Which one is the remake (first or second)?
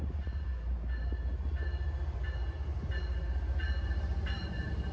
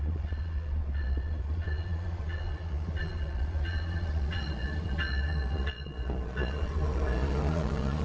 second